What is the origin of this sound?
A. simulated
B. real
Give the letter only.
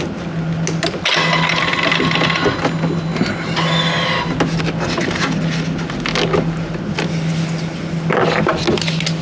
B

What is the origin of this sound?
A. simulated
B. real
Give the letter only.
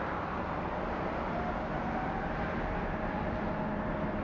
B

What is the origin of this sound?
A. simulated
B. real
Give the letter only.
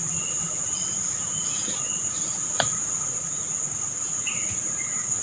A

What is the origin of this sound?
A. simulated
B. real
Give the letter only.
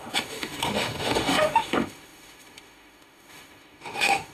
A